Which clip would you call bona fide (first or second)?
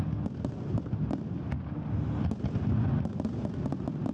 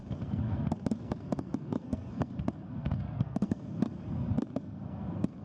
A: first